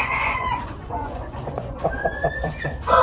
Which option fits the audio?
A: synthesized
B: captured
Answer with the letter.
A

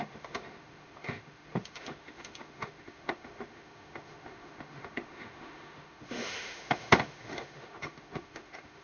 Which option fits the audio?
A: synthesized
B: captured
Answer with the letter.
A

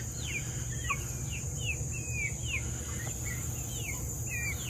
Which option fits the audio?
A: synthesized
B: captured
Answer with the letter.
B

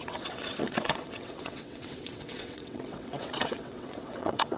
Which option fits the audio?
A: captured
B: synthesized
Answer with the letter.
B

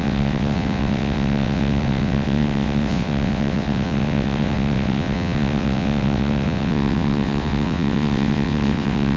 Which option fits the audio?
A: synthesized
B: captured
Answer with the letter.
A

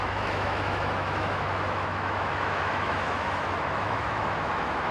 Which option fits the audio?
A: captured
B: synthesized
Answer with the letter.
B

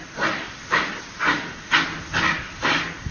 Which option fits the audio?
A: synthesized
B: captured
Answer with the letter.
B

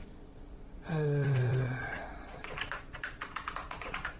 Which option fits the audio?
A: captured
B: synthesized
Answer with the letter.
B